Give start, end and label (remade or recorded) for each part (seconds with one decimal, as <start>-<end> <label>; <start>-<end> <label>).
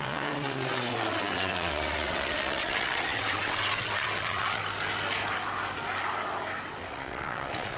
0.0-4.6 remade; 4.6-6.8 recorded; 6.8-7.8 remade